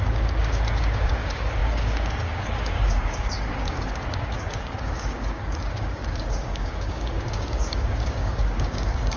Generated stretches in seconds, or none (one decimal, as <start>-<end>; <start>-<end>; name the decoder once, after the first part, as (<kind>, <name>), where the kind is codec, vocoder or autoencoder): 0.0-9.2 (codec, DAC)